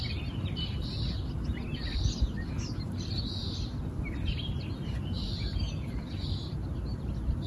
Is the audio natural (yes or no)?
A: yes